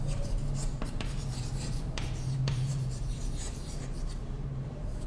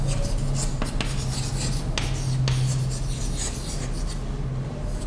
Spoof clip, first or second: first